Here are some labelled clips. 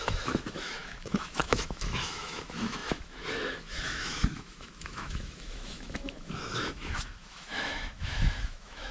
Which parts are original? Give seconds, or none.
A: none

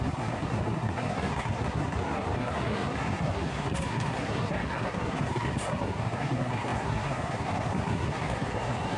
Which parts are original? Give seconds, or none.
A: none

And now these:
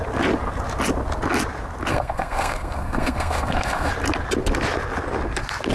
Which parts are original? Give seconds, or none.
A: 0.0-1.9; 3.9-5.7